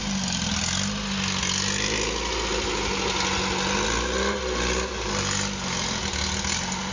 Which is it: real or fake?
real